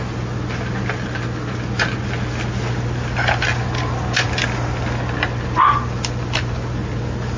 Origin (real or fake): real